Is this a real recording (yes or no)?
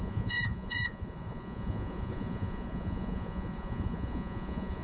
no